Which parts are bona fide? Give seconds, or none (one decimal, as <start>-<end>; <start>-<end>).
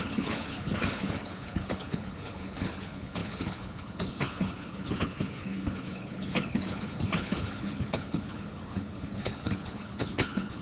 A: none